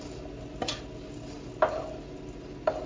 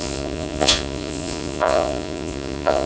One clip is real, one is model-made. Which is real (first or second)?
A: first